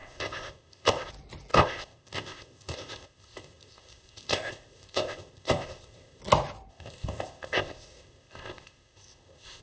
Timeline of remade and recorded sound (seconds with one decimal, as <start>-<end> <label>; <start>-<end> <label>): 0.0-1.1 remade; 1.1-1.5 recorded; 1.5-6.2 remade; 6.2-6.7 recorded; 6.7-9.6 remade